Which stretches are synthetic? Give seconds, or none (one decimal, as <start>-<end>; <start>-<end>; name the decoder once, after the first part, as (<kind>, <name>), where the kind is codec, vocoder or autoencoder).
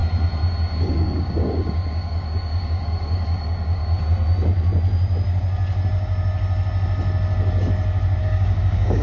0.8-3.8 (codec, DAC); 8.2-9.0